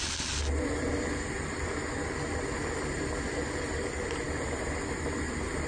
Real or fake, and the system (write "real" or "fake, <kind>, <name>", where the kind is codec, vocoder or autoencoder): real